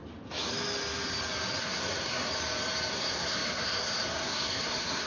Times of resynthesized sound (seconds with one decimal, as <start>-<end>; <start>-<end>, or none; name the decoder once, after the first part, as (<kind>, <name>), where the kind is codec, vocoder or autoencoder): 1.6-2.3 (codec, SNAC); 2.9-5.1